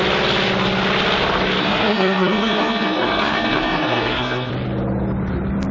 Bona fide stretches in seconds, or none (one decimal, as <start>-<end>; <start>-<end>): 0.0-1.6; 4.5-5.7